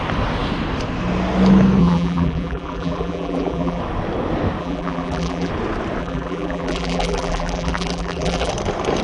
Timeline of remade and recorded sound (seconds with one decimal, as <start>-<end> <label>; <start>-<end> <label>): 0.0-1.8 recorded; 1.8-3.8 remade; 3.8-4.6 recorded; 4.6-5.5 remade; 5.5-6.0 recorded; 6.0-8.5 remade; 8.5-9.0 recorded